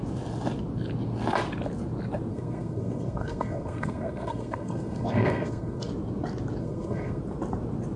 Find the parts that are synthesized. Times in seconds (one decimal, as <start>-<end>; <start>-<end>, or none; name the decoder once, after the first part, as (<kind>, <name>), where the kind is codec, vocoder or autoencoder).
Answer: 2.3-5.9 (codec, SNAC); 6.6-7.2